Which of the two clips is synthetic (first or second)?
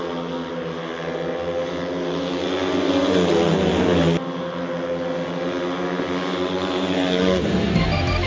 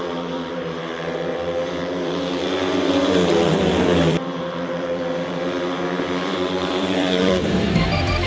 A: second